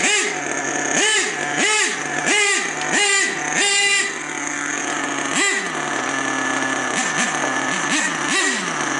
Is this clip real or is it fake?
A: real